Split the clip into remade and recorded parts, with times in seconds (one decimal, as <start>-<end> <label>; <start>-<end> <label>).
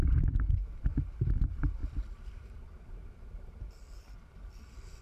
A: 0.0-1.8 recorded; 1.8-5.0 remade